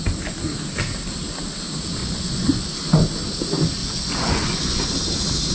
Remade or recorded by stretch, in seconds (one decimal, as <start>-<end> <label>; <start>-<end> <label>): 0.0-2.0 recorded; 2.0-2.7 remade; 2.7-3.8 recorded; 3.8-4.8 remade; 4.8-5.5 recorded